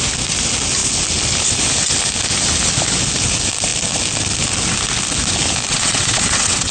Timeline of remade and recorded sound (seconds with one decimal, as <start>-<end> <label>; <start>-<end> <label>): 0.0-5.7 recorded; 5.7-6.7 remade